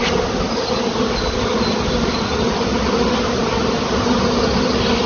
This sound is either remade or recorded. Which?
recorded